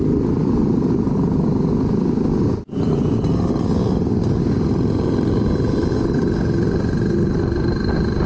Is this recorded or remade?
recorded